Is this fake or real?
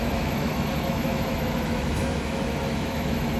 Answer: fake